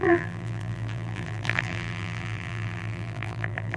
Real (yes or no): no